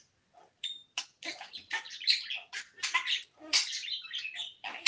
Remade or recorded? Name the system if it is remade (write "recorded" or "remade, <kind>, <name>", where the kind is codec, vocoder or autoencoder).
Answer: remade, vocoder, BigVGAN v2